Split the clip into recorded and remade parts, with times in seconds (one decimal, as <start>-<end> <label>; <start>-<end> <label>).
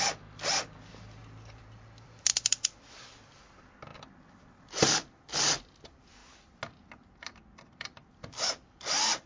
0.0-6.2 remade; 6.2-6.9 recorded; 6.9-9.3 remade